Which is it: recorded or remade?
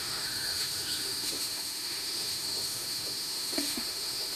remade